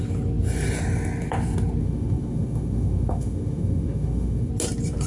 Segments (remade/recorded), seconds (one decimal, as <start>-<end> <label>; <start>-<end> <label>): 0.0-1.8 recorded; 1.8-4.5 remade; 4.5-5.1 recorded

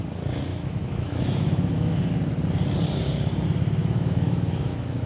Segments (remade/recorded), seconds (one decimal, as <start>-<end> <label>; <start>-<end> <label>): 0.0-0.5 recorded; 0.5-2.0 remade; 2.0-3.8 recorded; 3.8-5.1 remade

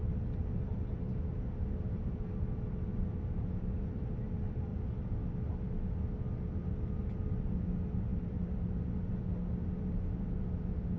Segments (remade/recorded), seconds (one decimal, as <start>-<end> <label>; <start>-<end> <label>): 0.0-11.0 recorded

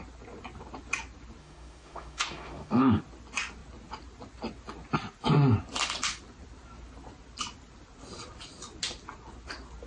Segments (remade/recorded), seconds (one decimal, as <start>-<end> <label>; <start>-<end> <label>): 0.0-1.4 recorded; 1.4-3.0 remade; 3.0-9.9 recorded

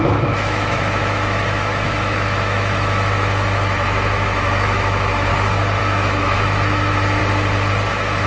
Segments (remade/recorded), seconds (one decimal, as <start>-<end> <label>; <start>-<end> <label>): 0.0-5.3 remade; 5.3-5.8 recorded; 5.8-7.2 remade; 7.2-7.9 recorded; 7.9-8.3 remade

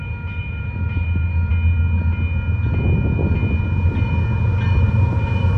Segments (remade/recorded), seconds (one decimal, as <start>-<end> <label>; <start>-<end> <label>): 0.0-1.5 remade; 1.5-4.9 recorded; 4.9-5.6 remade

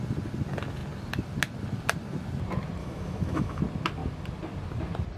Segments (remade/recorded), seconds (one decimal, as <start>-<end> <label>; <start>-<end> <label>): 0.0-2.8 recorded; 2.8-3.6 remade; 3.6-5.2 recorded

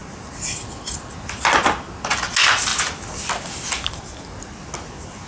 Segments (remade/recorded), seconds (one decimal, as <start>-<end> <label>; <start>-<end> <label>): 0.0-5.3 recorded